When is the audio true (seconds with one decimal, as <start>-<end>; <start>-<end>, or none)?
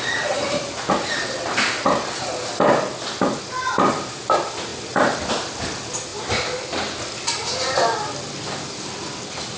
0.0-9.6